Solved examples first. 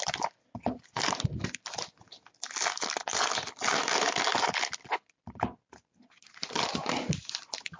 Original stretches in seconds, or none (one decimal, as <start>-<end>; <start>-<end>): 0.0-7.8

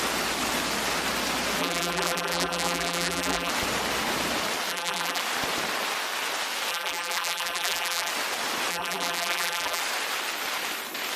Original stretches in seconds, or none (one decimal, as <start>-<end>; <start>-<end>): 0.0-1.6; 3.5-4.7; 5.2-6.7; 8.1-8.7; 9.8-11.2

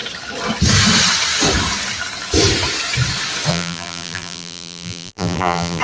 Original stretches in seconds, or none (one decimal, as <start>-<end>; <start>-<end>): 0.0-3.5

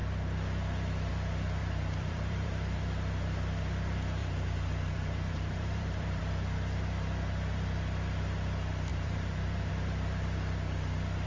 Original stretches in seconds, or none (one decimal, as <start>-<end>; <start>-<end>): 0.0-1.6; 2.8-4.2; 6.2-8.9; 9.7-11.3

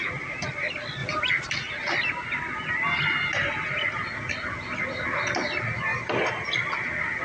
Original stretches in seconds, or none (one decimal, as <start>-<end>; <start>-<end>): 0.0-5.9; 6.7-7.2

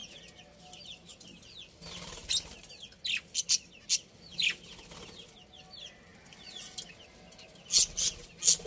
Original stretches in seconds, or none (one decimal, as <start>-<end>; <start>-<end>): 0.0-8.7